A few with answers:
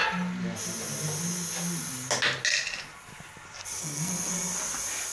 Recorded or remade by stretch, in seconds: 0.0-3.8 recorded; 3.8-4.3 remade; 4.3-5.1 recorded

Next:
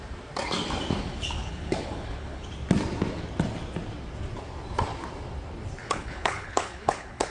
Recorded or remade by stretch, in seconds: 0.0-1.0 recorded; 1.0-2.5 remade; 2.5-5.8 recorded; 5.8-7.3 remade